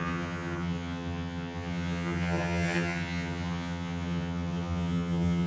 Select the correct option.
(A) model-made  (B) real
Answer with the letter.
A